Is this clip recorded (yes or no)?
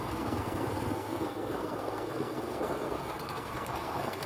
no